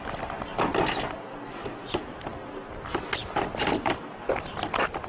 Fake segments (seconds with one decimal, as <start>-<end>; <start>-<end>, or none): none